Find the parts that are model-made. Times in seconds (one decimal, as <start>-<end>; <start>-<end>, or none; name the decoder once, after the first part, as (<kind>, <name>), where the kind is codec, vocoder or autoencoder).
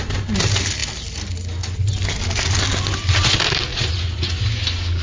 3.7-4.3 (vocoder, Vocos)